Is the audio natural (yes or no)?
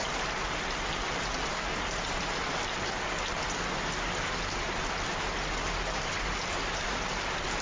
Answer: yes